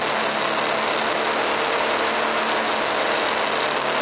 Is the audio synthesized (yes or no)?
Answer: no